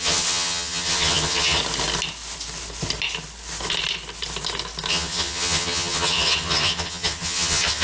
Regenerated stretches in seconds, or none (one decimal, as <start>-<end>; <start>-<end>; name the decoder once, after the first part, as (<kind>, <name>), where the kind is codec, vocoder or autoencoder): 0.0-1.6 (vocoder, HiFi-GAN); 4.9-7.8